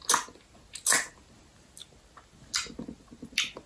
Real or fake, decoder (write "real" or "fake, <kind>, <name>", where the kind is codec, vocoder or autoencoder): real